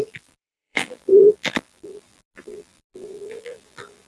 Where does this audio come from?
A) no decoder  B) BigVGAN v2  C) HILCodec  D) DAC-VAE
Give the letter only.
B